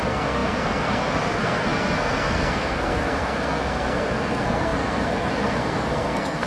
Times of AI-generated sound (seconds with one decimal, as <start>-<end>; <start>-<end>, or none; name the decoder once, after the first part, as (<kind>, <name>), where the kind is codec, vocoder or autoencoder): 0.0-6.5 (codec, SNAC)